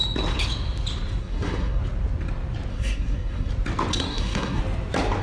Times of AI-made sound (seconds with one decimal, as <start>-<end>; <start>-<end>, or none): 1.2-1.8; 2.7-3.5; 3.9-4.6